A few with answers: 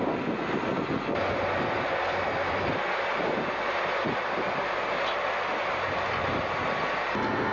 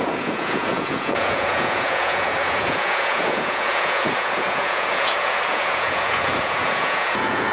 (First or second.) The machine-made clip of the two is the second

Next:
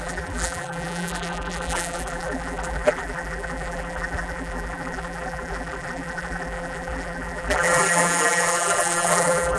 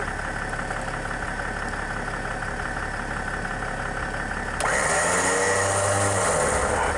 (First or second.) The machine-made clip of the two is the first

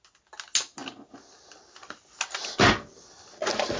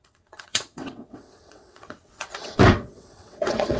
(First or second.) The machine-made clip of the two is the second